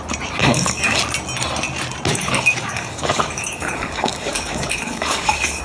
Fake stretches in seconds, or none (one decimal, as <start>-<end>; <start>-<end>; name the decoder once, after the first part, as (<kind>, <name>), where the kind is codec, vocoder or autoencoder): 0.4-1.0 (codec, DAC); 2.1-5.6